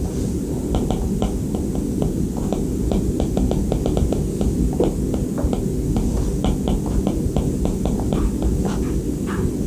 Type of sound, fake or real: real